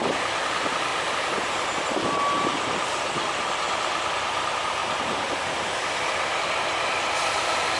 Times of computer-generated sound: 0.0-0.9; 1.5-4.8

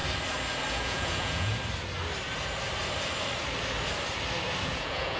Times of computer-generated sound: 0.7-1.5; 4.6-5.2

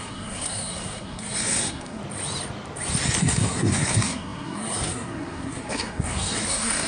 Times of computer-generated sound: 0.0-2.0; 3.2-6.9

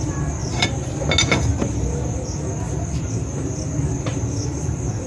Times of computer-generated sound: 0.4-0.9; 4.1-5.1

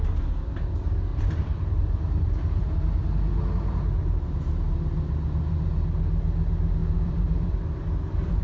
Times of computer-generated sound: 1.1-2.2; 6.8-8.4

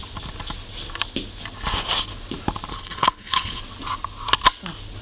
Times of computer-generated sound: 2.7-3.6

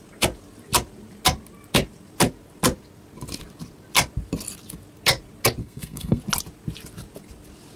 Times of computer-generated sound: 5.6-6.2